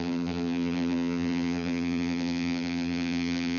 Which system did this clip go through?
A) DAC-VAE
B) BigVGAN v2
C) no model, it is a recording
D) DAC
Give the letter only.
B